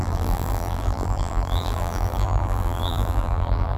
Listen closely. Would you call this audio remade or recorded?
remade